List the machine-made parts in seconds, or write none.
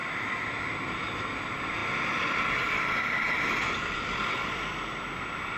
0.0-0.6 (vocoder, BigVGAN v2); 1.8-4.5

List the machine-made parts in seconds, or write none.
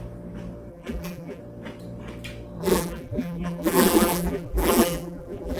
0.7-1.4 (vocoder, BigVGAN v2); 2.6-5.6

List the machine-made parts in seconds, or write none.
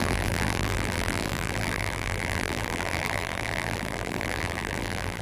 0.0-5.2 (vocoder, BigVGAN v2)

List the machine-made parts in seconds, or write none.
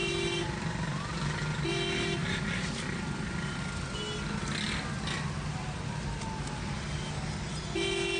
none